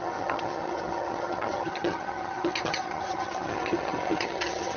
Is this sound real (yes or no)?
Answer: no